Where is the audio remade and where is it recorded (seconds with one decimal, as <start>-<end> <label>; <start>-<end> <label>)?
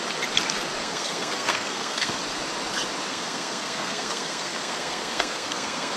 0.0-0.8 recorded; 0.8-2.2 remade; 2.2-3.1 recorded; 3.1-6.0 remade